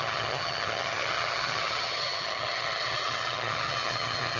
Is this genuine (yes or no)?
no